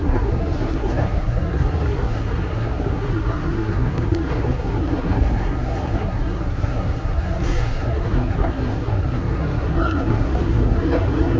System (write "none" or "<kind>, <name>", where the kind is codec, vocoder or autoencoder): codec, SNAC